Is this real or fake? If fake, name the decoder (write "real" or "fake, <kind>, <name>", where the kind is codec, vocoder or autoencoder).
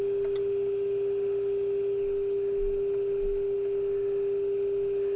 real